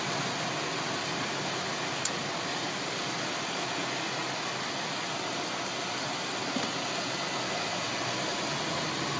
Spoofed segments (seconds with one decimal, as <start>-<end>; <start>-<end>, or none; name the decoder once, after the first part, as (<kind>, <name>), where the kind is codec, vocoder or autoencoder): none